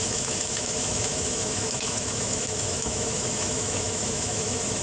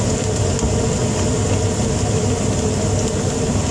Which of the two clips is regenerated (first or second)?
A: first